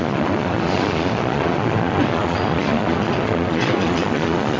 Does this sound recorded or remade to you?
remade